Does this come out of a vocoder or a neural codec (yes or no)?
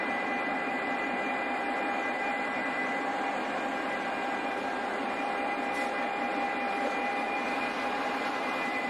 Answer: yes